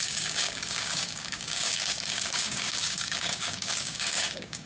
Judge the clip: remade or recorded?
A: remade